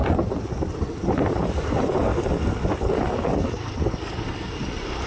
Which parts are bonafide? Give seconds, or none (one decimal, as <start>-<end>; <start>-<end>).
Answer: 0.0-0.7; 2.1-4.4